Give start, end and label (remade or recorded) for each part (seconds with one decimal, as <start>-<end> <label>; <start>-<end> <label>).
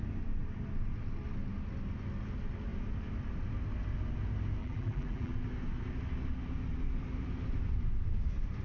0.0-4.6 recorded; 4.6-5.3 remade; 5.3-8.6 recorded